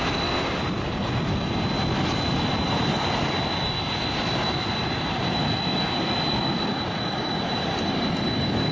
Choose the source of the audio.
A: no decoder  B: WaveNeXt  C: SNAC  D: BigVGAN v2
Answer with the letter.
A